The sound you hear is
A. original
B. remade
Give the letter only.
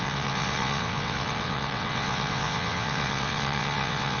B